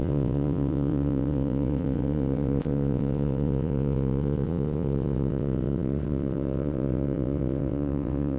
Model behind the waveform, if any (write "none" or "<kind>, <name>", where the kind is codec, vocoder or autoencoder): vocoder, WaveNeXt